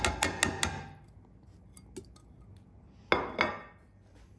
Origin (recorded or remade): recorded